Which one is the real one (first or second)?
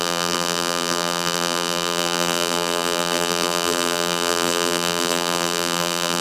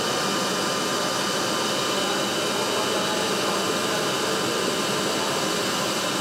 second